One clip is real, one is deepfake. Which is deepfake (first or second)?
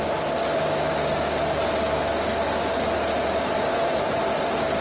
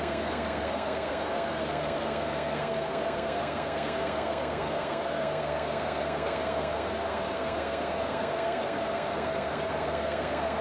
second